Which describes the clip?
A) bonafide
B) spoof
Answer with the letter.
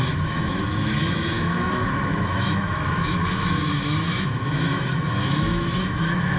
B